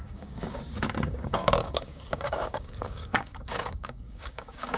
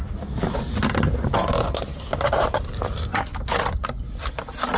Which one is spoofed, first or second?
first